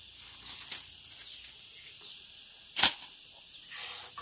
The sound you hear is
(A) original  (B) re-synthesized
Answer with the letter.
A